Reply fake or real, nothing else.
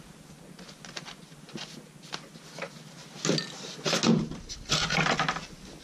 real